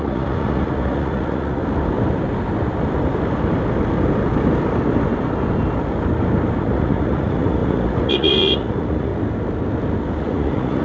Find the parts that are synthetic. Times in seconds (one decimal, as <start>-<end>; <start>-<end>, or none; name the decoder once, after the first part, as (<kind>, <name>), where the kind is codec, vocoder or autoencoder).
0.0-1.6 (vocoder, Vocos); 6.6-9.1; 10.2-10.8